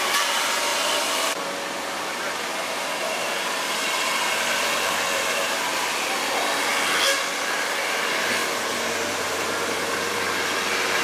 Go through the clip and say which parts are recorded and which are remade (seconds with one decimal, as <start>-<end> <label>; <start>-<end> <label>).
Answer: 0.0-6.7 remade; 6.7-7.4 recorded; 7.4-11.0 remade